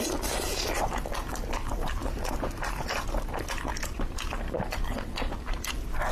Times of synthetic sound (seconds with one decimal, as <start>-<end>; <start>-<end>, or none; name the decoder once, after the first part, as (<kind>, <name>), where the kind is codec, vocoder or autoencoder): 0.0-6.1 (vocoder, BigVGAN v2)